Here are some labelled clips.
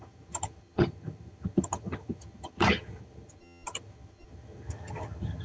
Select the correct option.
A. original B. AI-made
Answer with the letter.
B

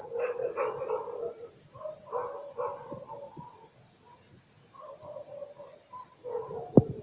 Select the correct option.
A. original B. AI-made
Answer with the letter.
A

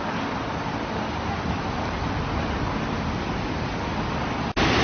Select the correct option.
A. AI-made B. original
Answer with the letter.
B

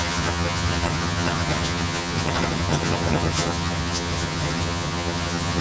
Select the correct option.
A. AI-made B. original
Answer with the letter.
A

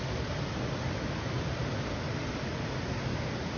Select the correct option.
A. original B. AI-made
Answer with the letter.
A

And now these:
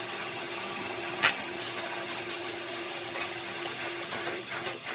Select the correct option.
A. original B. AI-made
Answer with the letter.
B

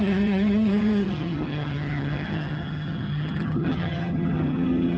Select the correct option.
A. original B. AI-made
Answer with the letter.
B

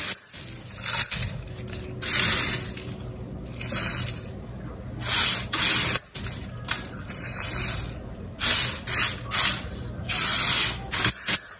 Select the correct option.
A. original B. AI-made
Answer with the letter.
A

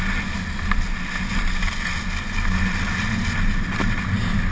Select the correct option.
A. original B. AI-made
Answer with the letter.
A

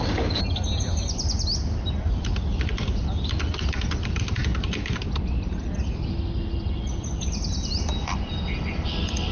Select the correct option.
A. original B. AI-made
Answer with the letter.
A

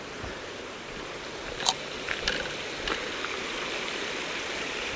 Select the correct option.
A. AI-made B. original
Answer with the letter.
B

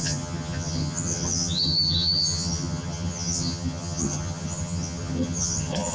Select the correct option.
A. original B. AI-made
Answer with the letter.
B